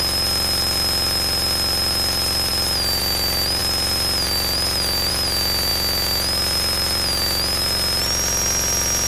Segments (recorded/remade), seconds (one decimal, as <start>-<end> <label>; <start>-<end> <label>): 0.0-9.1 recorded